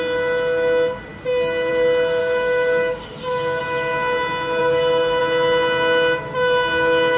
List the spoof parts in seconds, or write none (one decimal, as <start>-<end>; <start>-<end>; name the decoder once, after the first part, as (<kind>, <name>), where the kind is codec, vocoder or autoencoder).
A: 2.2-3.6 (codec, DAC); 4.6-5.2